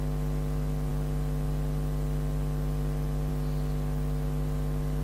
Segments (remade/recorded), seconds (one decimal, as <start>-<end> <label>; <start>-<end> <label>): 0.0-5.0 recorded